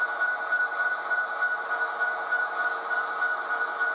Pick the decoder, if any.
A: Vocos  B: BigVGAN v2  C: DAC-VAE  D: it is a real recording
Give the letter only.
D